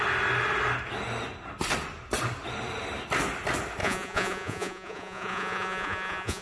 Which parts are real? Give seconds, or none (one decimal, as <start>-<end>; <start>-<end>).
0.0-3.8